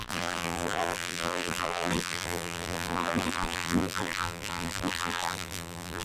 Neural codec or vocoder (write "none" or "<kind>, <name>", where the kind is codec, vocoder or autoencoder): vocoder, BigVGAN v2